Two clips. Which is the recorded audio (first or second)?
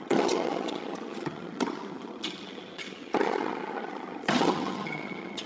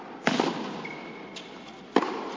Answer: second